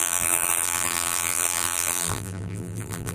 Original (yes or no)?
no